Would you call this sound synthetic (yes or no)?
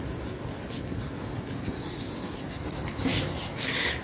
no